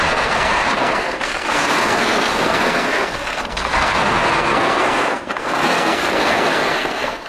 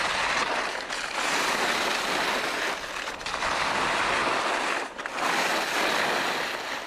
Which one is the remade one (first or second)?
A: first